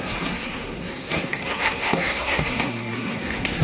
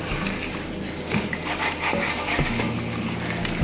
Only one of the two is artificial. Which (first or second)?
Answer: first